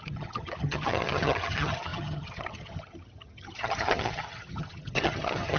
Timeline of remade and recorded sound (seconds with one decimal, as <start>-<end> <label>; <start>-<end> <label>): 0.0-5.6 remade

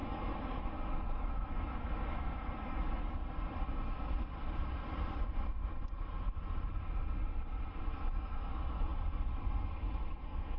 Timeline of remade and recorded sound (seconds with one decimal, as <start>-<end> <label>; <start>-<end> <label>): 0.0-3.2 remade; 3.2-7.8 recorded; 7.8-8.9 remade; 8.9-9.6 recorded; 9.6-10.6 remade

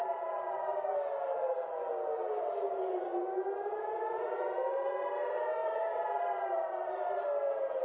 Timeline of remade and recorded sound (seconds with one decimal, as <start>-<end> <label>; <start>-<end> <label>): 0.0-7.8 recorded